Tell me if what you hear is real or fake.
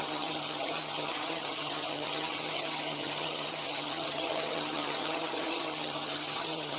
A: fake